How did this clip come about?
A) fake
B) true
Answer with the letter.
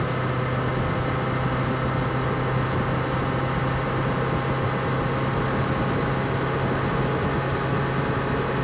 B